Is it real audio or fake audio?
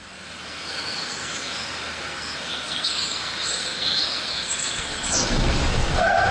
fake